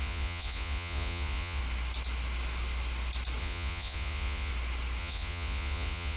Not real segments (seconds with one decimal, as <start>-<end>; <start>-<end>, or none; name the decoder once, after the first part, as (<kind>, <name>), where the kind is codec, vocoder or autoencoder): 0.0-1.6 (vocoder, Vocos); 3.4-4.5; 5.0-6.2